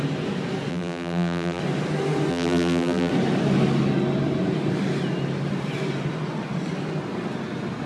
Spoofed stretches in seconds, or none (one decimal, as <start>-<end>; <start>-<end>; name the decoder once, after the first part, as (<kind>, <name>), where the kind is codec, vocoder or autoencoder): 0.7-1.6 (vocoder, BigVGAN v2); 2.3-3.1